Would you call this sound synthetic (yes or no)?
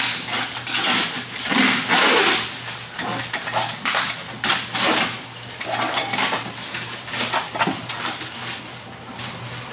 no